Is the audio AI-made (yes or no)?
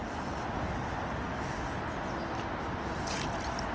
no